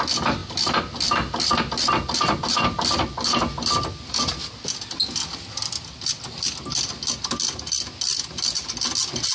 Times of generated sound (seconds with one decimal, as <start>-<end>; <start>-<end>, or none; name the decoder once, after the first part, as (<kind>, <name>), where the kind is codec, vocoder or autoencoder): none